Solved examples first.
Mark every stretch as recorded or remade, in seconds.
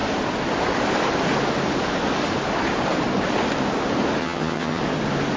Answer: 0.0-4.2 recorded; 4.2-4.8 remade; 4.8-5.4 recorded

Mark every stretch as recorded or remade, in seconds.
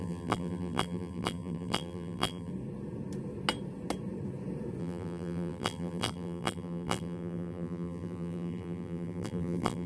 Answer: 0.0-2.5 remade; 2.5-4.8 recorded; 4.8-9.9 remade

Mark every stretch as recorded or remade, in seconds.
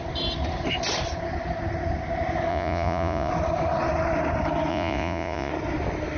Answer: 0.0-2.5 recorded; 2.5-3.3 remade; 3.3-4.7 recorded; 4.7-5.5 remade; 5.5-6.2 recorded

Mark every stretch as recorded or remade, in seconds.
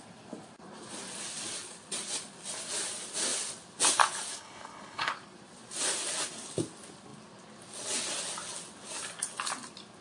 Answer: 0.0-4.3 recorded; 4.3-5.1 remade; 5.1-10.0 recorded